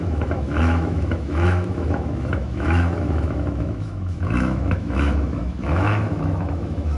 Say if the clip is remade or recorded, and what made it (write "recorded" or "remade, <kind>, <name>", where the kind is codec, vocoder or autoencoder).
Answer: remade, autoencoder, DAC-VAE